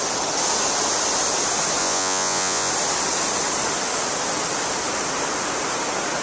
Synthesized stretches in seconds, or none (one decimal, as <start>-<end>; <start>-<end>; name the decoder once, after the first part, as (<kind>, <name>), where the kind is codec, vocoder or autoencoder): 1.8-2.7 (vocoder, Vocos)